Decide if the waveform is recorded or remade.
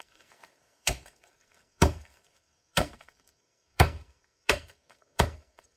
remade